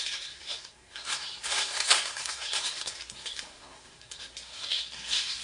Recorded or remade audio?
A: remade